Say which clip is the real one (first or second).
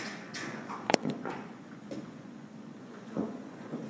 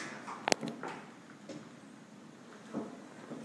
second